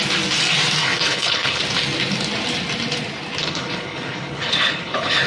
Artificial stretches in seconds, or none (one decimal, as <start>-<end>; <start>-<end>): 0.8-1.6; 3.4-5.3